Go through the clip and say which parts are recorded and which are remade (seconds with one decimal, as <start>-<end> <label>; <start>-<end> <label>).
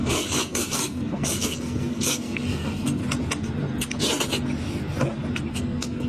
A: 0.0-3.0 remade; 3.0-5.5 recorded; 5.5-6.1 remade